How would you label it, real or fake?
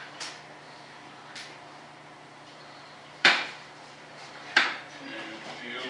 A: fake